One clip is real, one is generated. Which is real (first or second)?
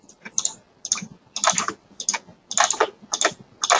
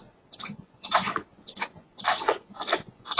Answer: first